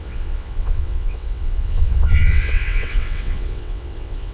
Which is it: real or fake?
fake